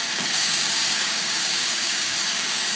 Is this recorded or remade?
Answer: remade